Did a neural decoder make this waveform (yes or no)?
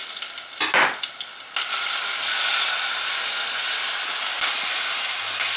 no